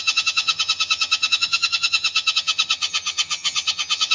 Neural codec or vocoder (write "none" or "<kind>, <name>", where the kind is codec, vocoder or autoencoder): vocoder, HiFi-GAN